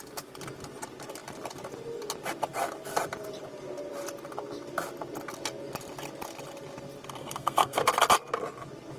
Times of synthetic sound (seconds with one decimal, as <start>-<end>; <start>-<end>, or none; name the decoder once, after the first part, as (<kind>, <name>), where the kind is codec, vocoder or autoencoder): 7.2-7.9 (codec, SNAC)